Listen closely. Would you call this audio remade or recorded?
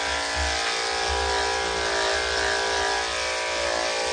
recorded